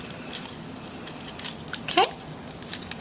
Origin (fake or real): real